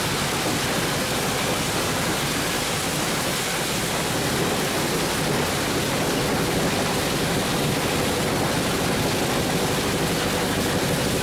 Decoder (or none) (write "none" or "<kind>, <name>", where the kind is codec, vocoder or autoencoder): none